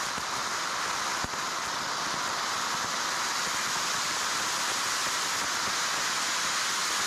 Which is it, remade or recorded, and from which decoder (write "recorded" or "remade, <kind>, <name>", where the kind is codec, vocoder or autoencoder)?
recorded